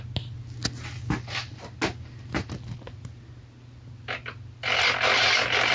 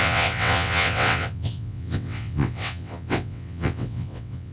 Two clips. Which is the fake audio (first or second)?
second